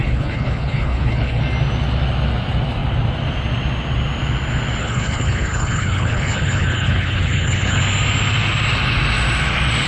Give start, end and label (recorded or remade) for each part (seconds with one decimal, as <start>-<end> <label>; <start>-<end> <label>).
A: 0.0-1.4 remade; 1.4-4.8 recorded; 4.8-7.8 remade; 7.8-9.9 recorded